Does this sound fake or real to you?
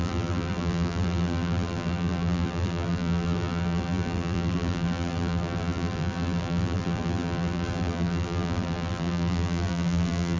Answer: fake